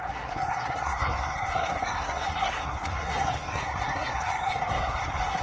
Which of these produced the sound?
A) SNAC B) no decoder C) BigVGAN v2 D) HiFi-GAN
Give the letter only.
A